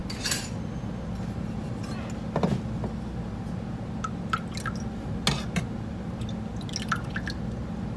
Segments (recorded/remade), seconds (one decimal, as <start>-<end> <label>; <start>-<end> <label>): 0.0-8.0 recorded